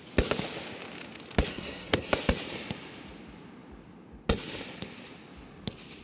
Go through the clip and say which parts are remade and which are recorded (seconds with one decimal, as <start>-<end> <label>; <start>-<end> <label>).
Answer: 0.0-1.5 recorded; 1.5-2.1 remade; 2.1-6.0 recorded